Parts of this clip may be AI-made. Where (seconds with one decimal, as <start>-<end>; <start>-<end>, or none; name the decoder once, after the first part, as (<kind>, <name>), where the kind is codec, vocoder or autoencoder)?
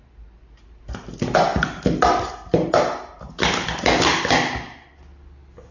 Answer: none